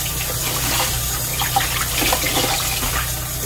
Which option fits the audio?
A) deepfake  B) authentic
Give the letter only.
B